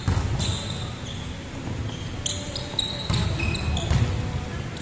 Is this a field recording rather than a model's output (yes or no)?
yes